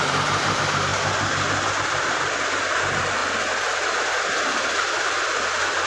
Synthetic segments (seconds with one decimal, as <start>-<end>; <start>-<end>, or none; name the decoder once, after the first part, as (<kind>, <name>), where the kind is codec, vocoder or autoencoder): 0.0-0.9 (vocoder, BigVGAN v2); 1.8-3.2; 4.5-5.9